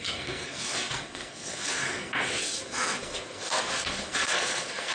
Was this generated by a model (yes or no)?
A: yes